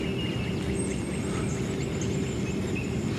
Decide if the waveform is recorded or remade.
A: recorded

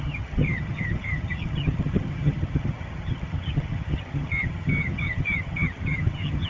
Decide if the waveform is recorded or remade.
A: remade